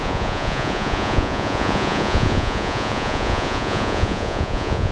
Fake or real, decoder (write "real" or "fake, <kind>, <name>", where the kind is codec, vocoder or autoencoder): fake, vocoder, Vocos